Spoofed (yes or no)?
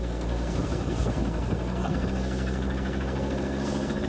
yes